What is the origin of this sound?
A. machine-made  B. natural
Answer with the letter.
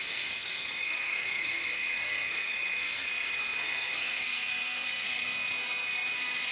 A